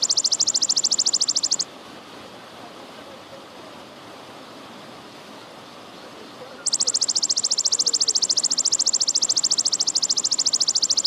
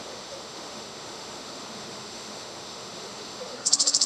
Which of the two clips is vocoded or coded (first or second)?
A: second